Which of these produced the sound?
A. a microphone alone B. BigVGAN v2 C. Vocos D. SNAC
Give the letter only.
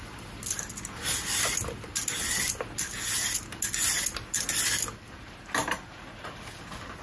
A